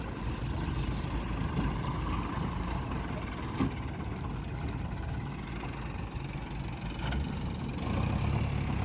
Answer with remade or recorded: recorded